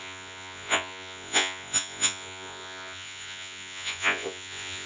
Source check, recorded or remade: remade